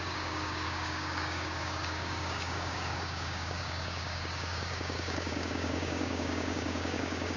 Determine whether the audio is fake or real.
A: fake